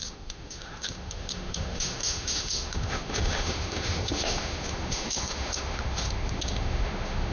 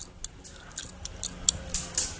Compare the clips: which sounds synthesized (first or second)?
first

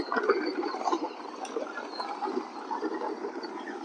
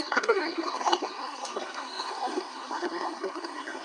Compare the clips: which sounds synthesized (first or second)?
second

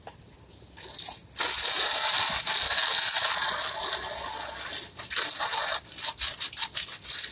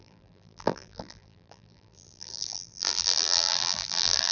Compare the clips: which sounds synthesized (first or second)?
second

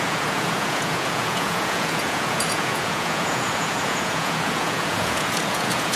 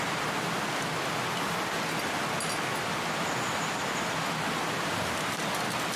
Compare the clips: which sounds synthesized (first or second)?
first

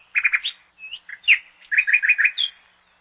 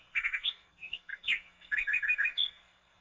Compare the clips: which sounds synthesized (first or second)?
second